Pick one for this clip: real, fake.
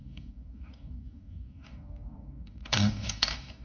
fake